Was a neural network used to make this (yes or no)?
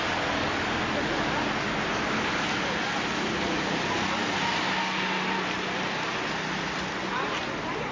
no